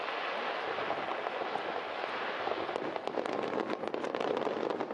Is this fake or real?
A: real